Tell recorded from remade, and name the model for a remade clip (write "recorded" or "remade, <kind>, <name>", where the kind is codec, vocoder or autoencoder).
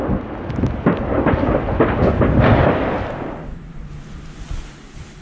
recorded